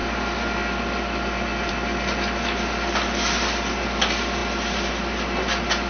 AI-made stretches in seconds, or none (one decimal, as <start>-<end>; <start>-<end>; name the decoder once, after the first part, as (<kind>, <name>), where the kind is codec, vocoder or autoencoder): none